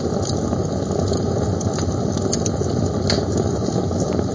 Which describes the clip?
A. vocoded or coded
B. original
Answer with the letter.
B